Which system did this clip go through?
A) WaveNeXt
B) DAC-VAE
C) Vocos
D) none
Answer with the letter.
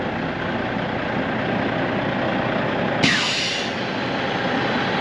D